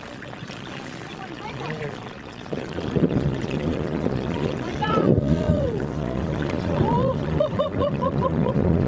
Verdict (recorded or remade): remade